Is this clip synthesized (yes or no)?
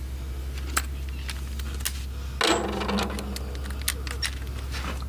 no